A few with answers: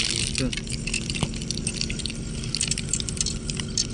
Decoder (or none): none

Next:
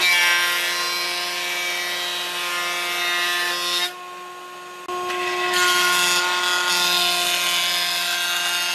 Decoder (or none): none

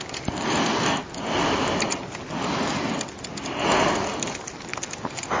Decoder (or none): none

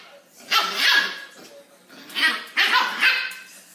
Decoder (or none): none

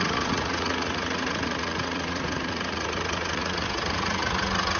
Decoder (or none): vocoder, Vocos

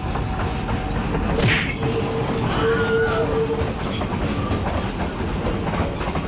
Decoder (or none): none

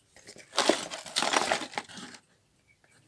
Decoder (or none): none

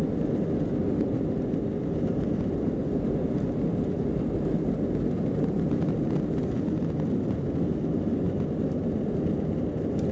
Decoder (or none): none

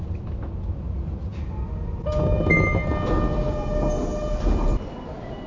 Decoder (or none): none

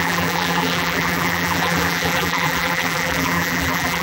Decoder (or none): vocoder, BigVGAN v2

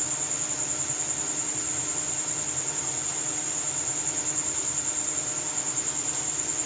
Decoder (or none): none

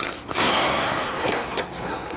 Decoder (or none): codec, SNAC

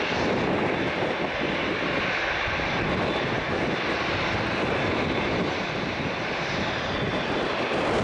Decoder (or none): none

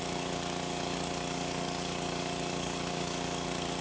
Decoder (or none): codec, DAC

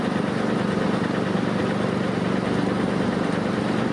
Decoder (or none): none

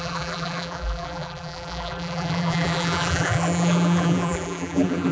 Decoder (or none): vocoder, BigVGAN v2